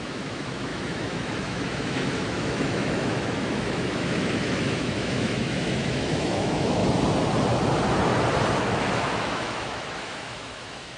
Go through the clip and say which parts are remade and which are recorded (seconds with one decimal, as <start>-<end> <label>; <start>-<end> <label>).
0.0-6.8 remade; 6.8-8.6 recorded; 8.6-11.0 remade